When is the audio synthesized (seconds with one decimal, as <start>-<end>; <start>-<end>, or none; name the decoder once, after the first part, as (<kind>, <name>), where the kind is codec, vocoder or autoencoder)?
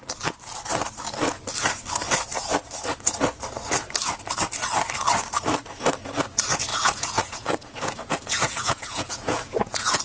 6.7-10.0 (vocoder, Vocos)